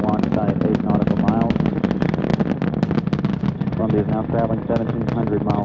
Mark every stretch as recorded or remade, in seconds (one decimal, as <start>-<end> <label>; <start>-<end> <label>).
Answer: 0.0-5.6 recorded